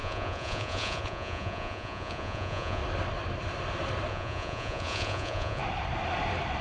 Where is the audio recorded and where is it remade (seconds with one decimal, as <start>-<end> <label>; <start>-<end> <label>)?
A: 0.0-2.8 remade; 2.8-4.1 recorded; 4.1-5.6 remade; 5.6-6.6 recorded